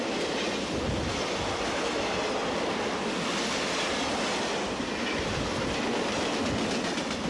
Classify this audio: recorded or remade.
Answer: recorded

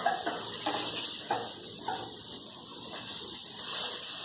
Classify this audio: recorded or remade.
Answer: recorded